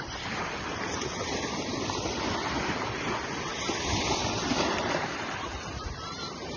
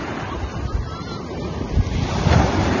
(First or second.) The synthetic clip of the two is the first